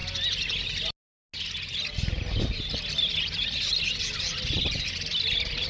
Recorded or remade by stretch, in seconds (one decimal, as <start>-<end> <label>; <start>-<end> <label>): 0.0-5.7 recorded